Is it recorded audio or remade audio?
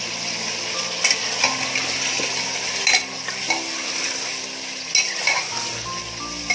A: recorded